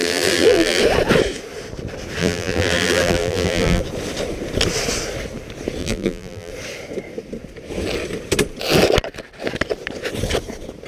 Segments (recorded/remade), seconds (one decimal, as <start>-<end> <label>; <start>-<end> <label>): 0.0-0.8 remade; 0.8-2.2 recorded; 2.2-3.8 remade; 3.8-5.8 recorded; 5.8-6.5 remade; 6.5-10.9 recorded

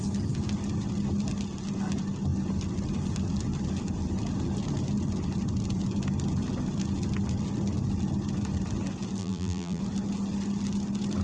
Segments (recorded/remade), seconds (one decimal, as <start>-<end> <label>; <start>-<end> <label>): 0.0-9.2 recorded; 9.2-9.8 remade; 9.8-11.2 recorded